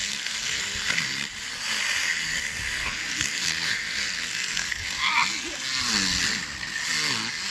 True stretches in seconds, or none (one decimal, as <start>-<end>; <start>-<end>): 0.6-2.3; 4.9-7.5